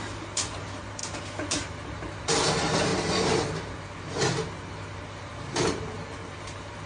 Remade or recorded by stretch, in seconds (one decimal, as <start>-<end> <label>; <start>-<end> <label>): 0.0-1.0 remade; 1.0-1.5 recorded; 1.5-2.9 remade; 2.9-3.7 recorded; 3.7-6.9 remade